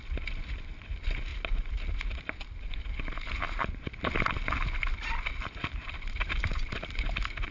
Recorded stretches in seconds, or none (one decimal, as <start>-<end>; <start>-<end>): 0.0-7.5